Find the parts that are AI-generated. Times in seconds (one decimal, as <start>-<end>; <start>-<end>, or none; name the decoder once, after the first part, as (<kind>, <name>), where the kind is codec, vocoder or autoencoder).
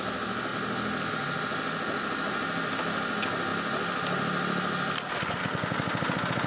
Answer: none